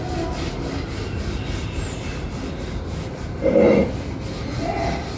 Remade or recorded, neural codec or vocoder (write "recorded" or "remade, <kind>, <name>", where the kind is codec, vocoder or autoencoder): recorded